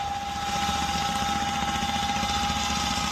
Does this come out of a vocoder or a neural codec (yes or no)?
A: no